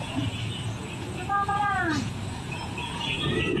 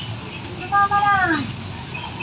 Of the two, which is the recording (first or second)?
second